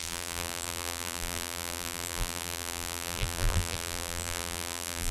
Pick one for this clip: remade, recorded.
remade